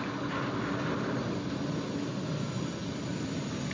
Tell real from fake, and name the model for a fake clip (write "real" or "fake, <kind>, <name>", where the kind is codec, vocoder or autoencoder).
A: real